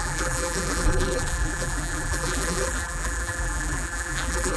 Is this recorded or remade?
remade